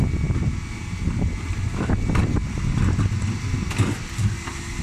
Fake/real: real